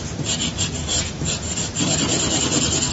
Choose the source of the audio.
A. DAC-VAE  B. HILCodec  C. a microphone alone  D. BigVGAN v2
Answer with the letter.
D